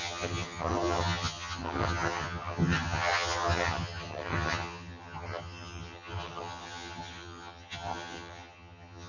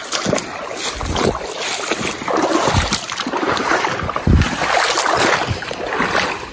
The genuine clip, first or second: second